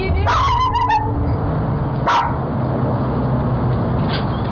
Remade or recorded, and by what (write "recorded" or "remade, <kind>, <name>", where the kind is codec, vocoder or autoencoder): recorded